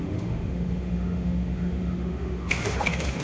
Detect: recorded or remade remade